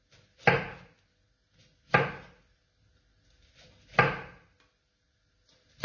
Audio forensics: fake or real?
real